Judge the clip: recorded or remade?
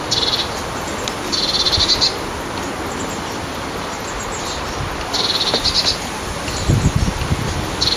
recorded